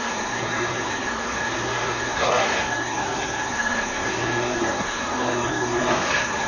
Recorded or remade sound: remade